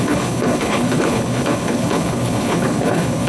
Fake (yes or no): yes